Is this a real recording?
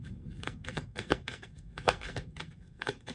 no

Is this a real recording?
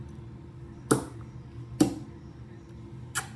yes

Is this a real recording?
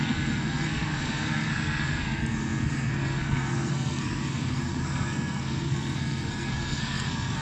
no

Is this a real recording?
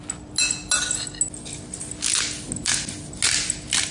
yes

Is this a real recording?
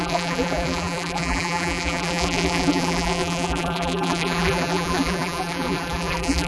no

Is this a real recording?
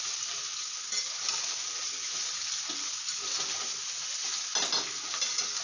yes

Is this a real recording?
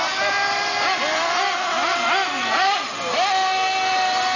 yes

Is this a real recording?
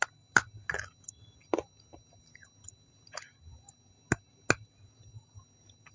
yes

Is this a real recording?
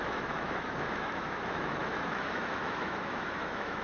no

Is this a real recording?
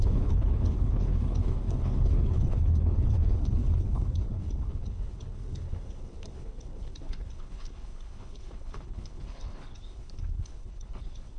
no